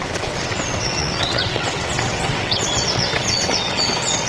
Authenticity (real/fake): fake